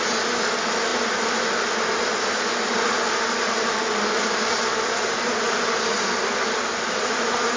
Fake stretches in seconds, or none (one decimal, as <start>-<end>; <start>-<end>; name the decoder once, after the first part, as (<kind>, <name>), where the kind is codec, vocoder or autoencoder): none